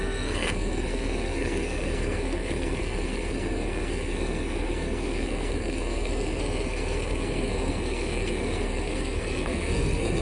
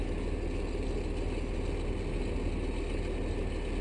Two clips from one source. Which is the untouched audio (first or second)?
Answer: second